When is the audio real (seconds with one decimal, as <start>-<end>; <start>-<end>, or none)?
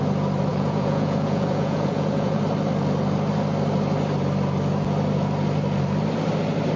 0.0-0.5; 2.4-6.8